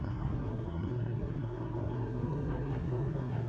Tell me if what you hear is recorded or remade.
remade